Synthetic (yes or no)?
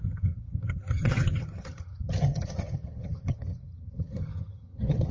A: yes